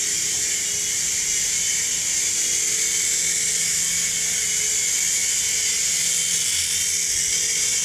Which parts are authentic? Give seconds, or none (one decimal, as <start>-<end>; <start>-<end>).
0.0-7.8